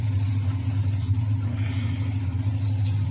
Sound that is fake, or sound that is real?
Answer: real